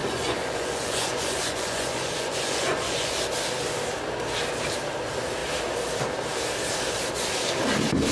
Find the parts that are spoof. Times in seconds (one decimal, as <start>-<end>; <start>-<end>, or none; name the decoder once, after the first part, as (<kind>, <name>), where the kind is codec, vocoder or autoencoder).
0.0-3.1 (vocoder, Vocos)